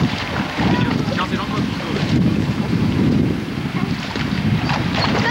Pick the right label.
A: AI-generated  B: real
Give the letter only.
A